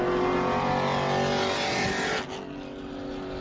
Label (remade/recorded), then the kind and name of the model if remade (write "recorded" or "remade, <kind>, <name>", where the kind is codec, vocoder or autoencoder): recorded